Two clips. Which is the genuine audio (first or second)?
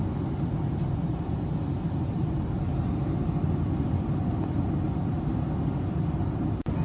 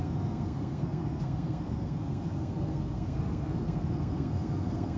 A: first